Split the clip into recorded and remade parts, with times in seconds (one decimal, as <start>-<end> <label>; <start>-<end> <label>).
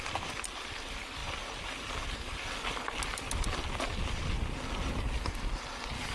0.0-6.1 recorded